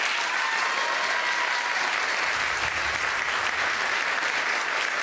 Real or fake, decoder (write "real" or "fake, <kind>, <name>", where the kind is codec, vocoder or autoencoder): real